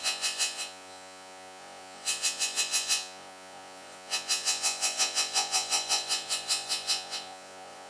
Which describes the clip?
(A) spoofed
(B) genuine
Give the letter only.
A